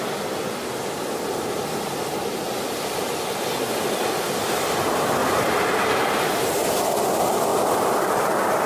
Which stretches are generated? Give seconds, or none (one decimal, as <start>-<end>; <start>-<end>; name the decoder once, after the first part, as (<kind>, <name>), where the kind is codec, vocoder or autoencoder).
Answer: 5.2-6.7 (vocoder, BigVGAN v2)